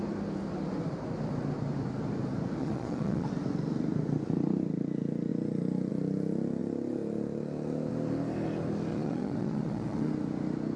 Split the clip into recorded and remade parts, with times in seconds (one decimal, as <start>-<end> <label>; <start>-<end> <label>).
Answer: 0.0-2.6 recorded; 2.6-3.3 remade; 3.3-8.9 recorded; 8.9-10.1 remade; 10.1-10.8 recorded